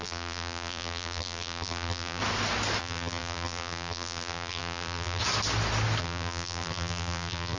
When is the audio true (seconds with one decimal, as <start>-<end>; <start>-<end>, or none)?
2.2-2.8; 5.2-6.0

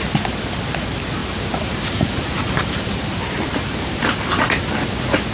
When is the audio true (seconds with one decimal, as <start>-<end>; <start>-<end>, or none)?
0.0-1.2; 4.4-5.3

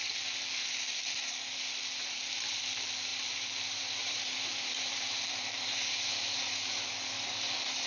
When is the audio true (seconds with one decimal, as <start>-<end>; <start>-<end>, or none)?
0.0-2.0; 2.6-3.1; 6.9-7.9